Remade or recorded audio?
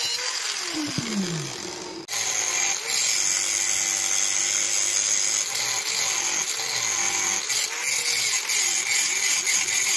recorded